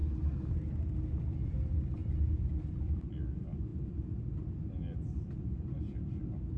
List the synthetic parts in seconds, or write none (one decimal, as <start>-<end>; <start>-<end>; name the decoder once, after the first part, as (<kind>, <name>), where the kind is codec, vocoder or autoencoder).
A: 1.1-3.7 (vocoder, BigVGAN v2); 4.4-6.6